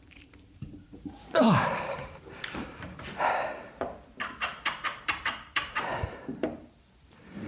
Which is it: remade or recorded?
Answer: remade